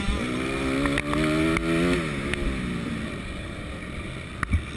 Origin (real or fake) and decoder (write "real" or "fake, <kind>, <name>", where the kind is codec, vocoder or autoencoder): real